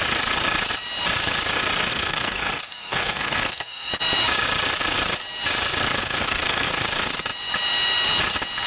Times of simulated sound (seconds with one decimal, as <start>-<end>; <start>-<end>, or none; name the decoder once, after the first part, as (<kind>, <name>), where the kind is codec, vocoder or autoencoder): 1.9-3.9 (codec, SNAC); 6.0-6.7